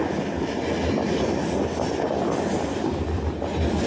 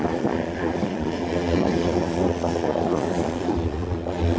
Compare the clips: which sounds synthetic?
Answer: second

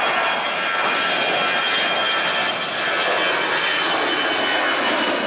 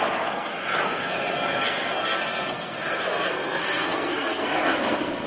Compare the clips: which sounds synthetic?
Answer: second